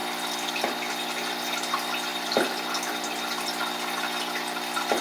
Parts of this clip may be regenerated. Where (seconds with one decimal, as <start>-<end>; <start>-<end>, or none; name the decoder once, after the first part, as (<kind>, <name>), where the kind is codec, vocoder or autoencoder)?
none